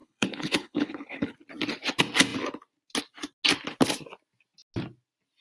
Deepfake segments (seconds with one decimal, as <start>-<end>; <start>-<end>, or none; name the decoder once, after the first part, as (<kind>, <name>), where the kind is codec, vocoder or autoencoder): 0.0-1.3 (codec, HILCodec)